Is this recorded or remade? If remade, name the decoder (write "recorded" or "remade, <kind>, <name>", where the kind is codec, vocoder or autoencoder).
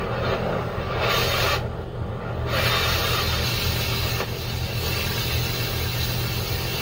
recorded